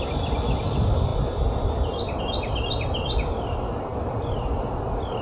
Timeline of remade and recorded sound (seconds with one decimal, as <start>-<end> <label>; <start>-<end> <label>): 0.0-5.2 recorded